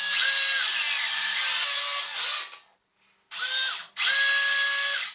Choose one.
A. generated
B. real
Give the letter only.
B